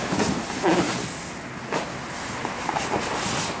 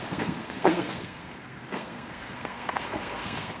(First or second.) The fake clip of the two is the second